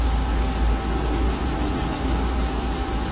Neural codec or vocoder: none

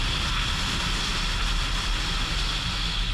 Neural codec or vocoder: none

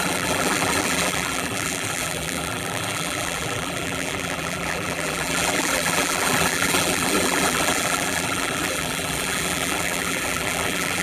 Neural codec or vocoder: vocoder, BigVGAN v2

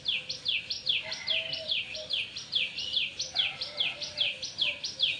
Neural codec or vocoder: none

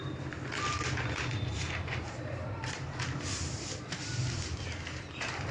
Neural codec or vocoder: vocoder, BigVGAN v2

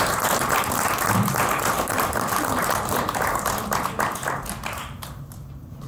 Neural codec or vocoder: vocoder, BigVGAN v2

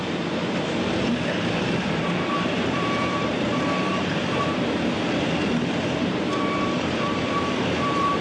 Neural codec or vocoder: vocoder, BigVGAN v2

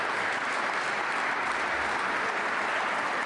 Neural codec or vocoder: none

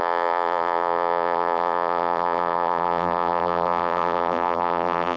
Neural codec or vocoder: vocoder, BigVGAN v2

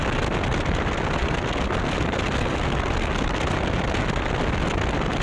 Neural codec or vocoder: none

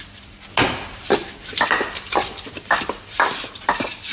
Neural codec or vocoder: vocoder, BigVGAN v2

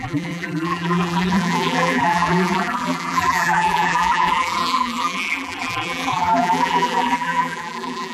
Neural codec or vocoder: vocoder, BigVGAN v2